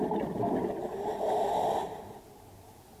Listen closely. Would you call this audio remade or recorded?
recorded